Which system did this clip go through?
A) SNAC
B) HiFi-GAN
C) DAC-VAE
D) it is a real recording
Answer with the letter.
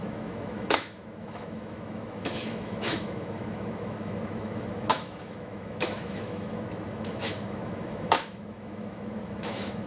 C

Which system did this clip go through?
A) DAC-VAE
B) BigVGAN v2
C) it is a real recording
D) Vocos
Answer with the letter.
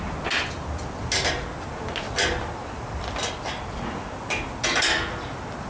C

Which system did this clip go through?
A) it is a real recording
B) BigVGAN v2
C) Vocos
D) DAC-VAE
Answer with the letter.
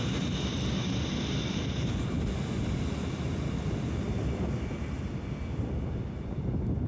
A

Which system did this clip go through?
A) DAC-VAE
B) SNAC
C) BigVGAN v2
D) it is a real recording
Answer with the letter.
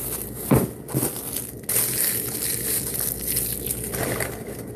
D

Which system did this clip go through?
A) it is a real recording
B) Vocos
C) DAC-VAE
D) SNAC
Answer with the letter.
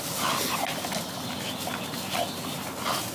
A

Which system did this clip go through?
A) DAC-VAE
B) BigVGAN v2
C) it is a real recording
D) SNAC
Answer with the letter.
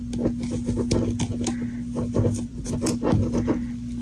C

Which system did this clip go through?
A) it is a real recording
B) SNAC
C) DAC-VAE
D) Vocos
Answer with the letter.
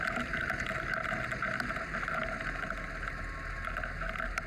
A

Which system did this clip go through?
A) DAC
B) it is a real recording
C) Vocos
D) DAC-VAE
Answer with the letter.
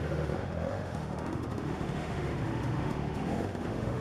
D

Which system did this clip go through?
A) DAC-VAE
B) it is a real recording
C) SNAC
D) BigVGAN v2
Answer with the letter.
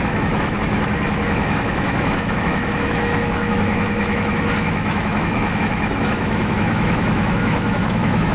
A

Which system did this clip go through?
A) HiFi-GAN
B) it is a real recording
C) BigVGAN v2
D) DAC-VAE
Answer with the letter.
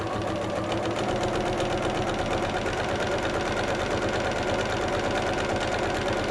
B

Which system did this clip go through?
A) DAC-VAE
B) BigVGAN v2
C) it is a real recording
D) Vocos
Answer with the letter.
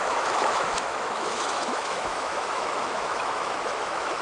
A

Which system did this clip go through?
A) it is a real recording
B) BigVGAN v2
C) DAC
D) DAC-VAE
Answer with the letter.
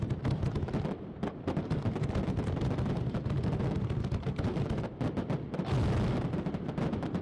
A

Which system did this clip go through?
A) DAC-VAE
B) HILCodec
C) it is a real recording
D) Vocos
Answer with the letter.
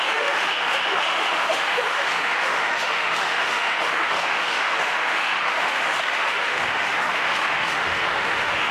A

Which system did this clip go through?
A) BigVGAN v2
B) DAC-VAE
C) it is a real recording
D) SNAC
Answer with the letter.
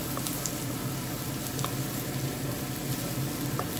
C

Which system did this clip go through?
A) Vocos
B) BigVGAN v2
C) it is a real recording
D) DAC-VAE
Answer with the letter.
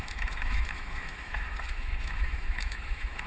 D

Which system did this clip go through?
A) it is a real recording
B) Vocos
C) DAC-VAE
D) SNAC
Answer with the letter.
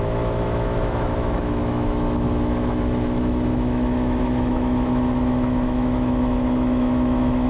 C